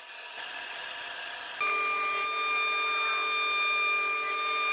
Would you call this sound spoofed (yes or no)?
no